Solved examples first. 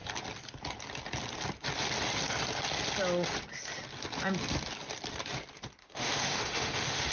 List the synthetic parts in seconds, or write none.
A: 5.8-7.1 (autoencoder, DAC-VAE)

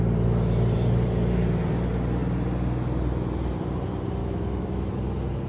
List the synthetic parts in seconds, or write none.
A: 4.2-4.9 (autoencoder, DAC-VAE)

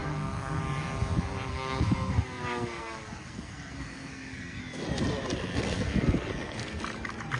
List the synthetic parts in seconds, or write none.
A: 0.0-0.6 (codec, SNAC); 1.5-4.6; 5.5-6.8

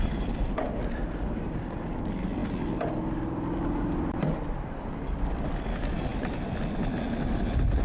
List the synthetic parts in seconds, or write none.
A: none

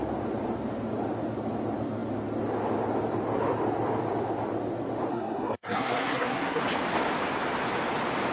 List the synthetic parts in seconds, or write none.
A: 5.1-6.6 (codec, SNAC)

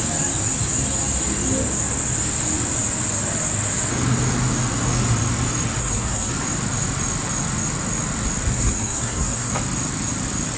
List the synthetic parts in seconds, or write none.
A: 5.8-6.3 (codec, SNAC); 8.5-9.5

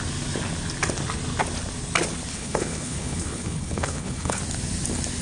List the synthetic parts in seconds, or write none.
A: 2.3-4.4 (codec, HILCodec)

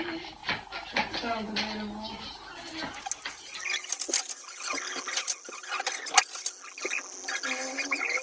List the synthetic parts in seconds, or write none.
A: none